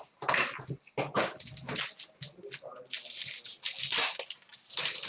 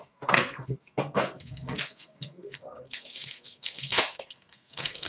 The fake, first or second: second